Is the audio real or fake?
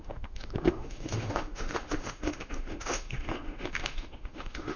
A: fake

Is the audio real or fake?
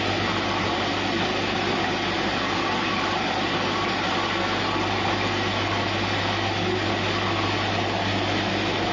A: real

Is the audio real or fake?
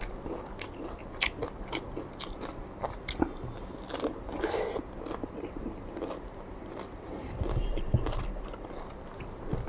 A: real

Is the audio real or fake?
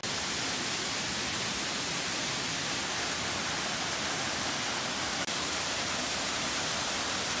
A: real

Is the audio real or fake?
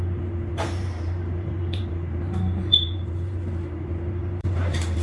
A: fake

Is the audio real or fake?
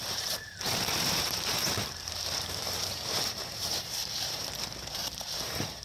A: fake